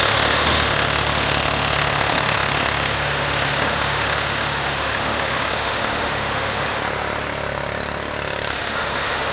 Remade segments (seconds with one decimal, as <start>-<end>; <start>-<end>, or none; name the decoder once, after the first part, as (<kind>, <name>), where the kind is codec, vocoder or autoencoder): 0.0-6.8 (autoencoder, DAC-VAE); 8.5-9.3